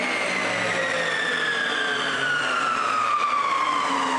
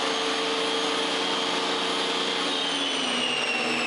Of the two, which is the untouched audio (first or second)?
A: second